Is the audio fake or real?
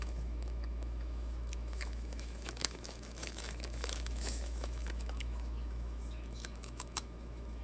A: fake